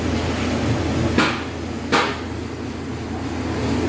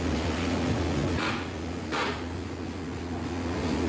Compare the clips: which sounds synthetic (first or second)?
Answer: second